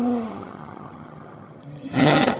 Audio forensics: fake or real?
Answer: fake